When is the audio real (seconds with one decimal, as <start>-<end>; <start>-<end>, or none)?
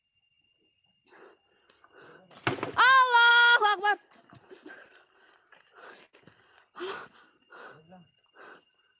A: 0.0-9.0